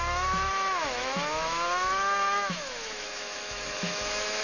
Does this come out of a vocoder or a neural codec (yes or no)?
yes